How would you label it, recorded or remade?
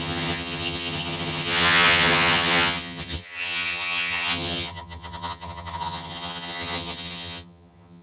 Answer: remade